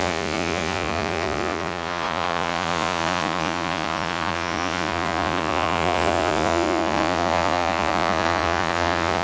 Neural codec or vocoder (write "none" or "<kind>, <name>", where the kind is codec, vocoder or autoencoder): vocoder, Vocos